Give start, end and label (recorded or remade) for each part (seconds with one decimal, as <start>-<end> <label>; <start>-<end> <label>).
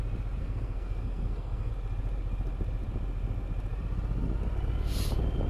0.0-0.4 recorded; 0.4-1.7 remade; 1.7-5.5 recorded